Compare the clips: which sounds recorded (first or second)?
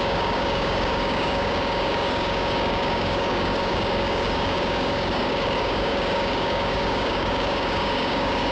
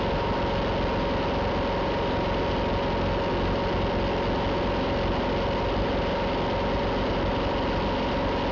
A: second